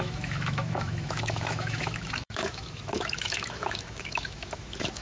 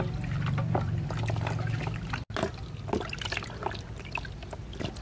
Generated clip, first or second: first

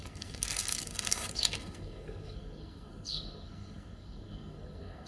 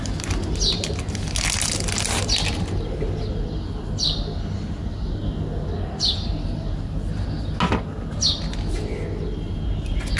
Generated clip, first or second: first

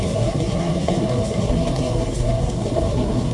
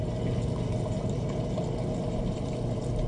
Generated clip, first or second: first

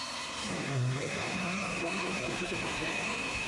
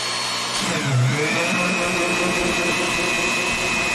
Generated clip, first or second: first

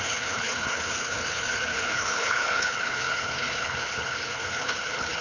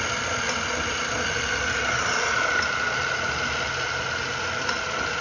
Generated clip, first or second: first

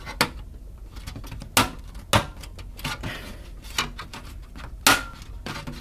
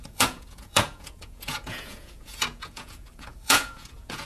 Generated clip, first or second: second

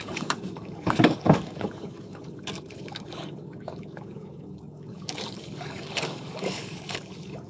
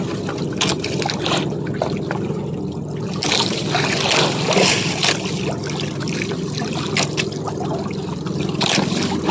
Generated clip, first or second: first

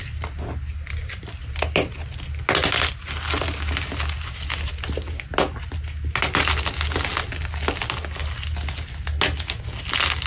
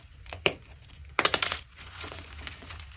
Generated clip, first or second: second